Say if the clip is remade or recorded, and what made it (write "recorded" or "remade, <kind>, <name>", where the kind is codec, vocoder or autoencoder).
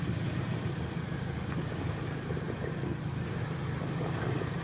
remade, vocoder, BigVGAN v2